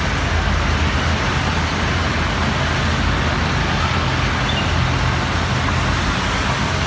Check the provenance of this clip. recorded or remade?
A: recorded